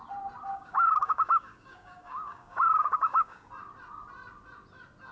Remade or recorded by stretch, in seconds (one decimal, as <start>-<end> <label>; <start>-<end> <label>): 0.0-0.5 recorded; 0.5-3.5 remade; 3.5-5.1 recorded